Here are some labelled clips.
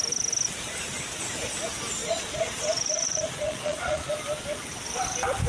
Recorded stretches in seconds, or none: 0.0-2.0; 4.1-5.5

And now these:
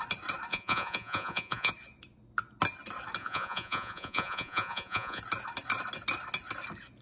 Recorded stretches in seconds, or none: 0.0-0.5; 1.7-3.2; 5.2-7.0

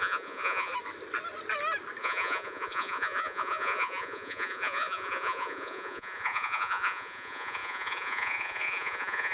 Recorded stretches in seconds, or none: 0.7-2.0